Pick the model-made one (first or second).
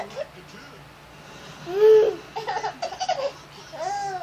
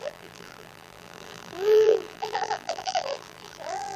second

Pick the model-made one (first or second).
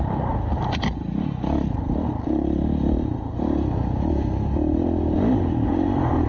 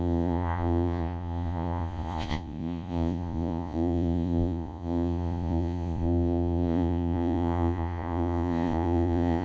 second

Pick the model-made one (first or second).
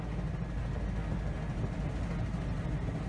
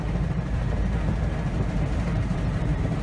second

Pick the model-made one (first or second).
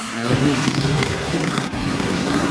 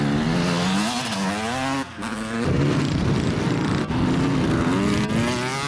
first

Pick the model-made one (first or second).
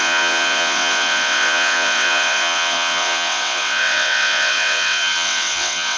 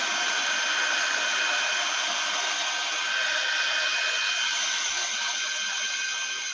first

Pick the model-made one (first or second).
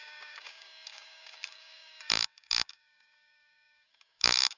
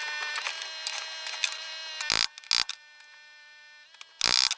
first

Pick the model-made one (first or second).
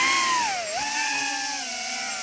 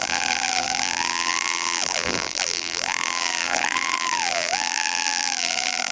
second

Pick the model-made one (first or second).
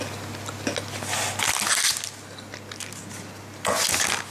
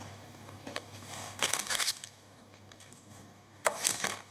second